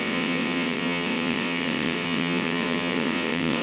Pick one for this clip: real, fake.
fake